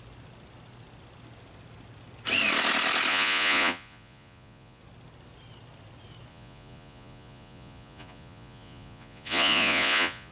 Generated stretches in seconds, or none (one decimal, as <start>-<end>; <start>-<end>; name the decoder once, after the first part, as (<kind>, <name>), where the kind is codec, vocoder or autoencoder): 3.1-4.8 (vocoder, Vocos); 6.3-10.3